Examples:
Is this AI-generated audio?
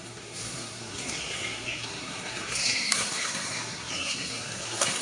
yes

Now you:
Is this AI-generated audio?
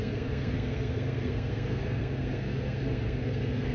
yes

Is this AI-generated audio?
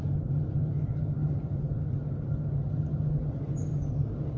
no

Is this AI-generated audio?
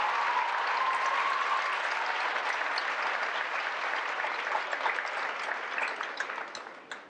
no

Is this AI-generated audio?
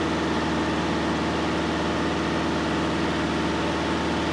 no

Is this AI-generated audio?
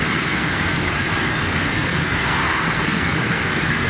yes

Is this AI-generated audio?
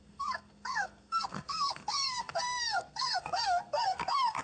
yes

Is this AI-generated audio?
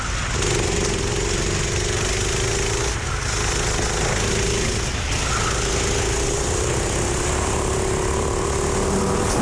no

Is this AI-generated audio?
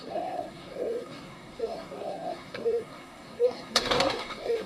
yes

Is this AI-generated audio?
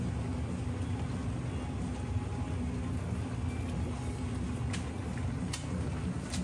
no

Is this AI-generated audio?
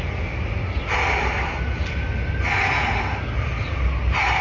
no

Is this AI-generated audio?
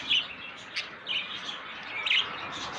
no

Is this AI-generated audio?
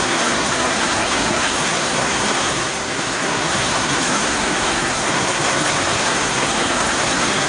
yes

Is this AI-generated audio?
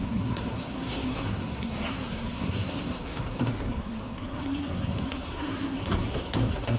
yes